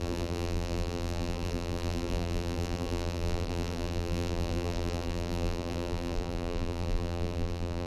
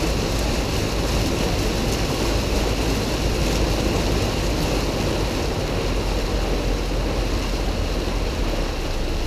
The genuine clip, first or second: second